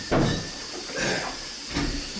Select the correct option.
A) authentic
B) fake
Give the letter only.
A